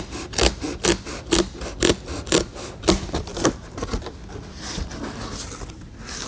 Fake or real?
real